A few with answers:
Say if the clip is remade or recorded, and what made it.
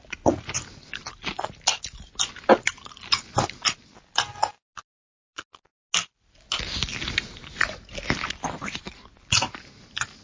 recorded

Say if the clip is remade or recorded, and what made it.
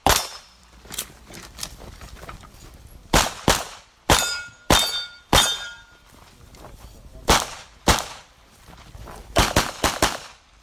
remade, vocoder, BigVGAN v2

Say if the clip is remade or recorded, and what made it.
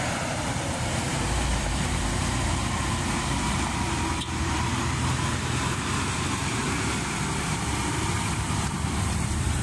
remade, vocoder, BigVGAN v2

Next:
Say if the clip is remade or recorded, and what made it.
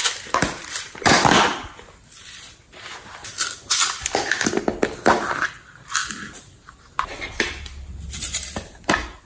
remade, vocoder, BigVGAN v2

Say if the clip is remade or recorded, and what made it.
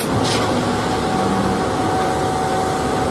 recorded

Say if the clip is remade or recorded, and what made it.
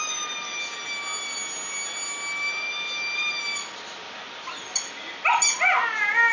recorded